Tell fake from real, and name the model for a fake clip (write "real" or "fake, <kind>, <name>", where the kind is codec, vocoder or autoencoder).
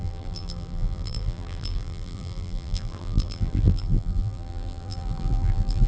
fake, vocoder, BigVGAN v2